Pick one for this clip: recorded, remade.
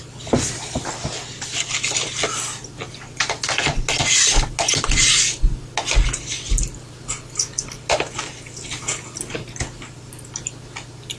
recorded